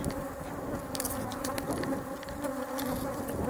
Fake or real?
real